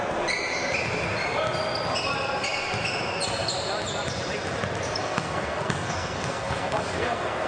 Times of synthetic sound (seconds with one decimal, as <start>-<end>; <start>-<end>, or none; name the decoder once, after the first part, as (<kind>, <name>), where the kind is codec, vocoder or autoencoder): 5.0-7.5 (codec, SNAC)